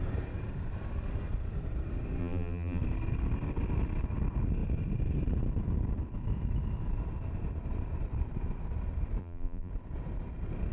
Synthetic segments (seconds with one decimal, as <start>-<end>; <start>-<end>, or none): 2.2-2.8; 9.2-9.7